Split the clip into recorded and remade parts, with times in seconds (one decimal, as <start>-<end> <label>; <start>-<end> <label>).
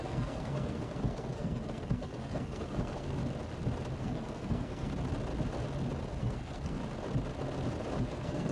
0.0-3.2 remade; 3.2-4.0 recorded; 4.0-4.9 remade; 4.9-6.2 recorded; 6.2-6.8 remade; 6.8-8.0 recorded; 8.0-8.5 remade